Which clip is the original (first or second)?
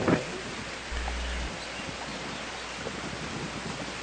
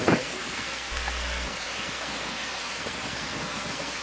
first